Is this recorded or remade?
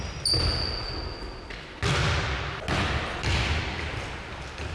recorded